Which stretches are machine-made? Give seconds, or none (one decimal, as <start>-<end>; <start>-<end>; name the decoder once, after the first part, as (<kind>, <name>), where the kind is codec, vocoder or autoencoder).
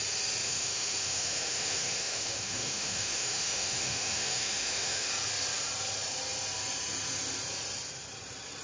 0.4-5.1 (autoencoder, DAC-VAE)